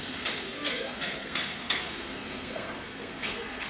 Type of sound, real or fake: fake